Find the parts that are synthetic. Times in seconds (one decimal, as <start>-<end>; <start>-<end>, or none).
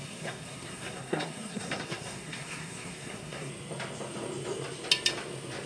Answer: 0.0-3.5